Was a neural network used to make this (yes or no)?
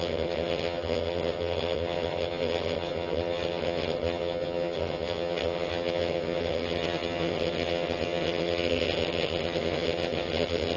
yes